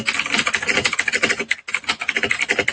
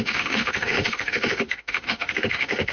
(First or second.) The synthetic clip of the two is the second